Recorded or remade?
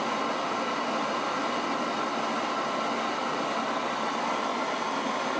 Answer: recorded